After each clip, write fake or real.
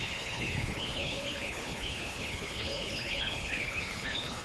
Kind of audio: fake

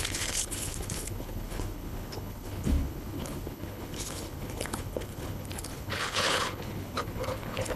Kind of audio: fake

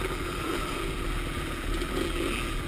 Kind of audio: fake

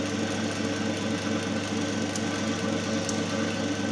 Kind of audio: real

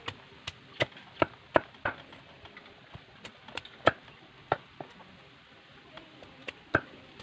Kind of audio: real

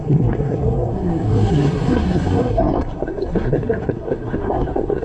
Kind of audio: fake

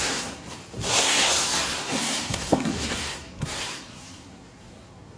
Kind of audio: fake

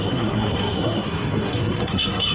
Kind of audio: fake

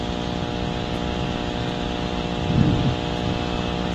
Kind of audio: real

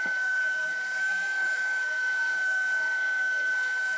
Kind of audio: fake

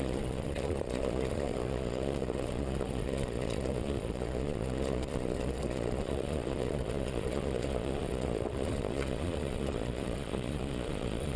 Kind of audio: fake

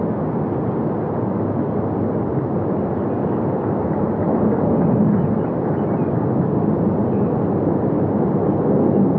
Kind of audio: real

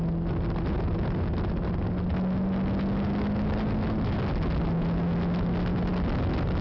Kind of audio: real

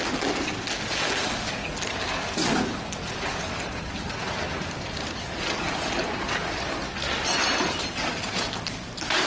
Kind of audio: real